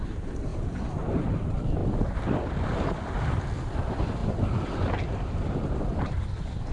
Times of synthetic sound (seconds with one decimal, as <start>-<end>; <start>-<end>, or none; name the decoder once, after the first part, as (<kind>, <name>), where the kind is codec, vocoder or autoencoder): 0.0-0.5 (vocoder, BigVGAN v2); 1.3-1.8; 3.8-4.2; 5.5-6.7